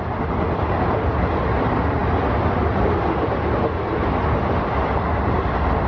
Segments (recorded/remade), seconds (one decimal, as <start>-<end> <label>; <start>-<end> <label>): 0.0-5.9 recorded